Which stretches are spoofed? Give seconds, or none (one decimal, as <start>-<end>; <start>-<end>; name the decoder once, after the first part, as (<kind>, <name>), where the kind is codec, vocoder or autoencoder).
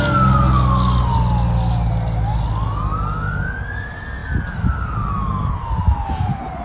none